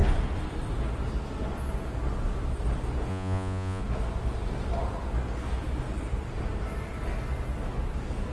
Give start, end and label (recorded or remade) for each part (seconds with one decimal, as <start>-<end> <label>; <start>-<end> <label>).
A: 0.0-3.1 recorded; 3.1-3.8 remade; 3.8-8.3 recorded